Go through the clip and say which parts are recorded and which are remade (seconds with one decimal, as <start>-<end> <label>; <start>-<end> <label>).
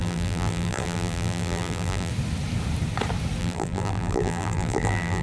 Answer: 0.0-2.1 remade; 2.1-3.4 recorded; 3.4-5.2 remade